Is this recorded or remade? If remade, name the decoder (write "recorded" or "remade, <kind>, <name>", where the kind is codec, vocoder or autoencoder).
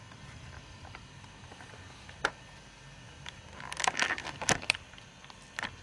recorded